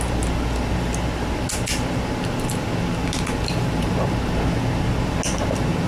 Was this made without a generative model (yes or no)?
yes